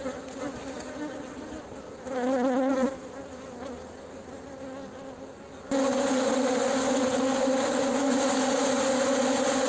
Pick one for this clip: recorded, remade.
recorded